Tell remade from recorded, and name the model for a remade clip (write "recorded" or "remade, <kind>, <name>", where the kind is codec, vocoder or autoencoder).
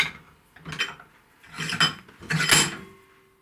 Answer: recorded